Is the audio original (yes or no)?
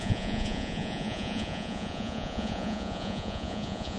no